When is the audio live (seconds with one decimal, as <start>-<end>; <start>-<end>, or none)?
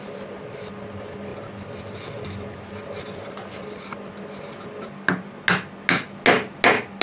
0.0-7.0